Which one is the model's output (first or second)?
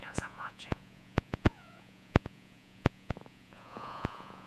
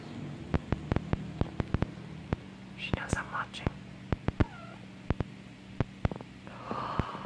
first